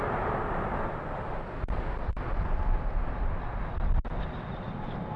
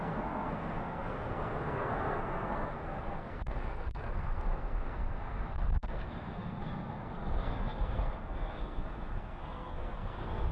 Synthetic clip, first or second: second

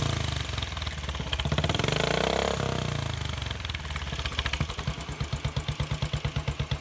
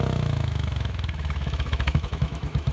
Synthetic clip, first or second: second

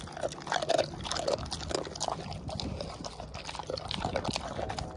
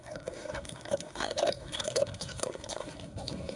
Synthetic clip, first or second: second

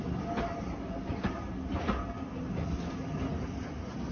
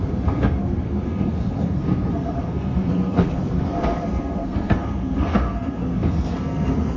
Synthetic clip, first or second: second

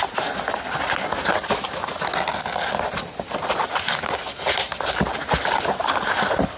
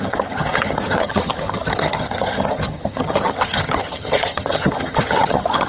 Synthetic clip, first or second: second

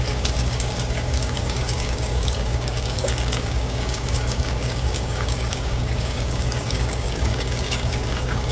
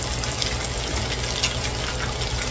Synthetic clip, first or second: first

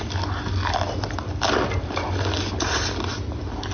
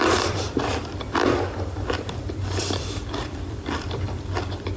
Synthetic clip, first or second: second